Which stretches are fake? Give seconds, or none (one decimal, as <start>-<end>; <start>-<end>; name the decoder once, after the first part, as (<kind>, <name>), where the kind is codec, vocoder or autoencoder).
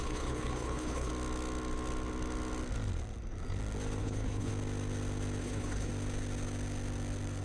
0.0-1.1 (codec, HILCodec); 4.0-4.5; 5.4-5.9